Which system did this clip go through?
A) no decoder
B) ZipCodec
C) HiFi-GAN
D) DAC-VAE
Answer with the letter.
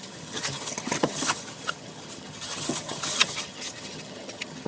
C